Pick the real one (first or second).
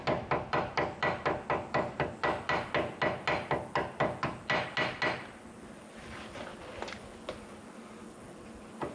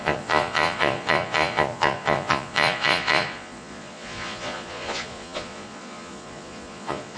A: first